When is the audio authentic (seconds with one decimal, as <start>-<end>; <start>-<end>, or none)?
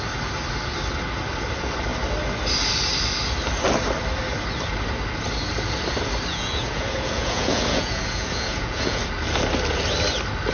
0.0-6.3; 9.0-10.5